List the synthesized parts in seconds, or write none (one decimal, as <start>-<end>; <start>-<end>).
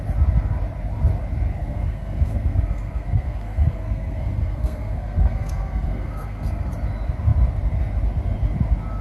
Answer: 1.6-6.7